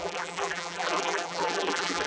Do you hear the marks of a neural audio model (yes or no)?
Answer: yes